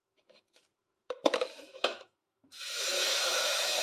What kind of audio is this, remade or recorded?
remade